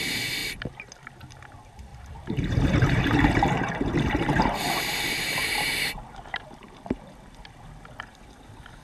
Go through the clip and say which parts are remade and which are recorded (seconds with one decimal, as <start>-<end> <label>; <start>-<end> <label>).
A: 0.0-1.9 recorded; 1.9-5.8 remade; 5.8-8.8 recorded